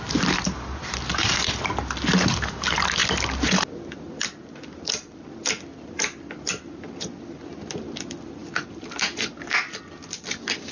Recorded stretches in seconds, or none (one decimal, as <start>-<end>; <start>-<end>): 0.0-10.7